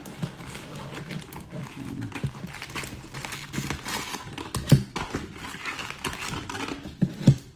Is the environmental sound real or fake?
real